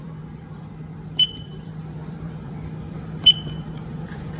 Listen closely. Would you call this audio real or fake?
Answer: fake